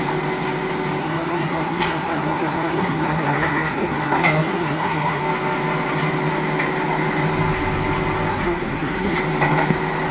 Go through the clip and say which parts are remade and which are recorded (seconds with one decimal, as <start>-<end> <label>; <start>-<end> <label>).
0.0-1.0 recorded; 1.0-5.2 remade; 5.2-8.3 recorded; 8.3-9.2 remade; 9.2-10.1 recorded